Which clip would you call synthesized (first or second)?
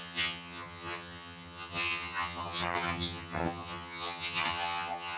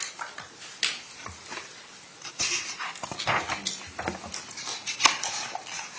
first